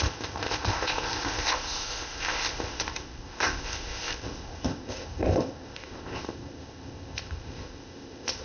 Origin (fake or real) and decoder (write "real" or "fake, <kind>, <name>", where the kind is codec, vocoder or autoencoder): fake, codec, ZipCodec